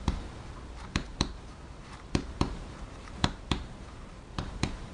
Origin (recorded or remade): remade